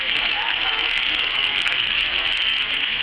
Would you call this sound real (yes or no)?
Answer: no